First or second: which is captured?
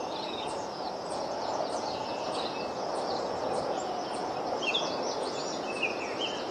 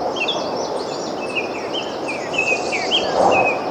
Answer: second